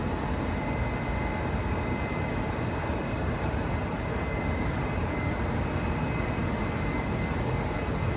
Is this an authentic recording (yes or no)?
yes